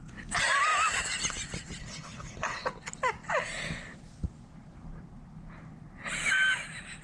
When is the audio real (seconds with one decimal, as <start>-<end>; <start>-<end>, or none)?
0.0-1.8; 2.7-7.0